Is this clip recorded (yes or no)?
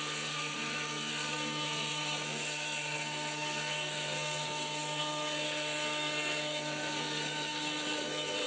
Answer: no